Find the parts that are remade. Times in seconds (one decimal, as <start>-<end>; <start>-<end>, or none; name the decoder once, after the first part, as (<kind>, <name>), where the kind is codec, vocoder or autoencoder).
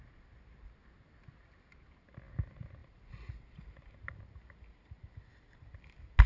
2.8-3.9 (vocoder, BigVGAN v2)